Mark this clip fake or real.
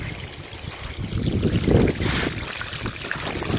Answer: real